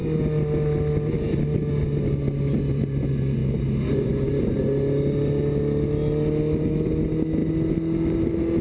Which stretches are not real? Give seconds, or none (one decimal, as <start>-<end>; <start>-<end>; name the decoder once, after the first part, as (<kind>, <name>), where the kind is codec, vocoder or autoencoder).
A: none